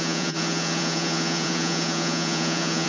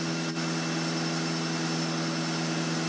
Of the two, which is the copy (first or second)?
first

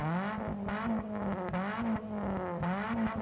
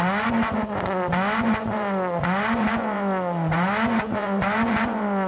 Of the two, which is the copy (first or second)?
second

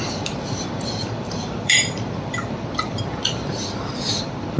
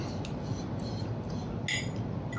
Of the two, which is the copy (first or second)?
first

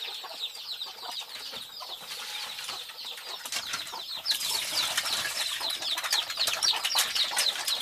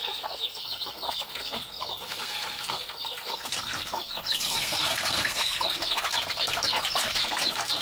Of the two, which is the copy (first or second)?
second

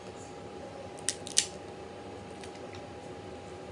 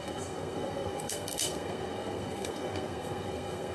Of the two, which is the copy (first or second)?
second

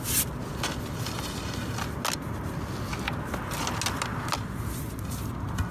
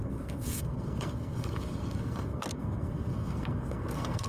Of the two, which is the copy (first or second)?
second